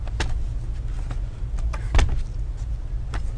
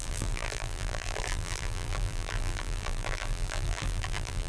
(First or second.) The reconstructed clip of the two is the second